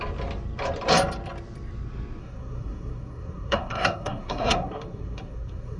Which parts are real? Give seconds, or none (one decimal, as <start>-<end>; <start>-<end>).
0.0-2.2